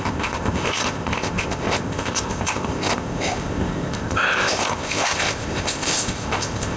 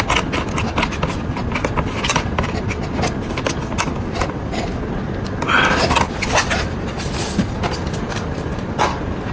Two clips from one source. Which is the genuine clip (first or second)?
second